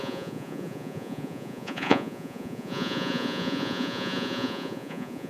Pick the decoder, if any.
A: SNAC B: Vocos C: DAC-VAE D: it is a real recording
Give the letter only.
B